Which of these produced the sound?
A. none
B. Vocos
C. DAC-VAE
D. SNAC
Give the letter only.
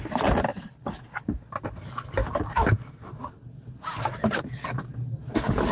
A